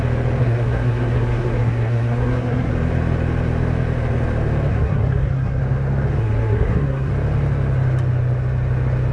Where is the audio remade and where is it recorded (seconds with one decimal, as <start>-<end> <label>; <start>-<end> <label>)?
0.0-0.4 recorded; 0.4-2.7 remade; 2.7-4.7 recorded; 4.7-5.6 remade; 5.6-6.2 recorded; 6.2-7.1 remade; 7.1-9.1 recorded